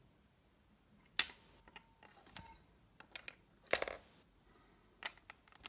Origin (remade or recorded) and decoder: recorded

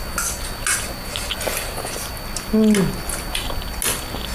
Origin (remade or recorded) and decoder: recorded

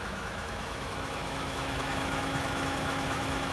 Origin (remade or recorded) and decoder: remade, autoencoder, DAC-VAE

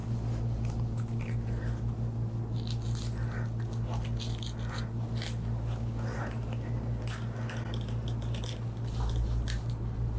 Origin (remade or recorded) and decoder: recorded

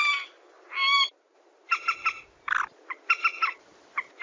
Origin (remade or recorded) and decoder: recorded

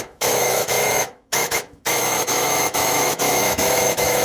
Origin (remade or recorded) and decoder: remade, autoencoder, DAC-VAE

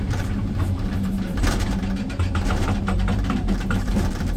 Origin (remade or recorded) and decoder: remade, vocoder, BigVGAN v2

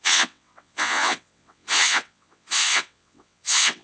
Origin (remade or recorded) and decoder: remade, vocoder, WaveNeXt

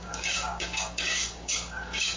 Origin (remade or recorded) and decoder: remade, codec, DAC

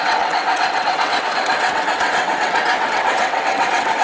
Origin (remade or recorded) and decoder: remade, vocoder, WaveNeXt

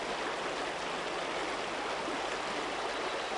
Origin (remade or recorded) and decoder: recorded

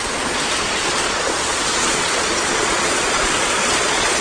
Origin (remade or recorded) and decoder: remade, vocoder, Vocos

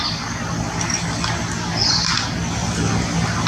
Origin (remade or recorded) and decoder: recorded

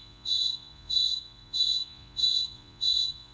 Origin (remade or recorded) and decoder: remade, vocoder, Vocos